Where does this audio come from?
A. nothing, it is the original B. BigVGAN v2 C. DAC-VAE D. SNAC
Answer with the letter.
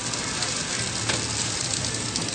A